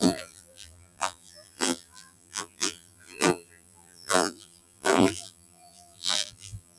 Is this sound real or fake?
fake